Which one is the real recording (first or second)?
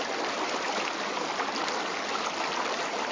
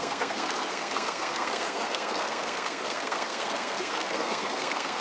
first